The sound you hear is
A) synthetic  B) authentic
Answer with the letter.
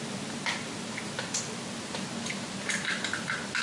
B